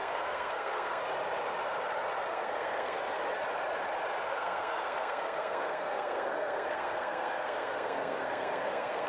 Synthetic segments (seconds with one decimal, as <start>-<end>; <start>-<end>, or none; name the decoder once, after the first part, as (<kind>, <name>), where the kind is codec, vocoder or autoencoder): 0.0-1.0 (codec, SNAC); 2.3-3.0; 4.3-9.1